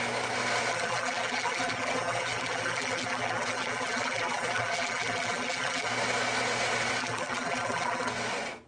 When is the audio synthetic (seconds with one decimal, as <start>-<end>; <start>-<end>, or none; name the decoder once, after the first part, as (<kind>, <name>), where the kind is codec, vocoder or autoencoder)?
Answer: 0.7-5.9 (vocoder, BigVGAN v2); 7.0-8.1